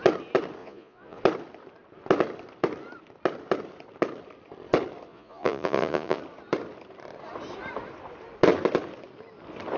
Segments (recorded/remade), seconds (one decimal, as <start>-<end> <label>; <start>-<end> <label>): 0.0-0.6 recorded; 0.6-1.2 remade; 1.2-5.1 recorded; 5.1-6.2 remade; 6.2-9.8 recorded